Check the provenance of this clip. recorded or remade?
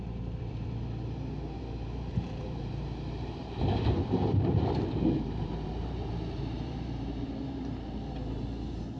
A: remade